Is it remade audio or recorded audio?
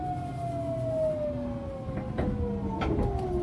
recorded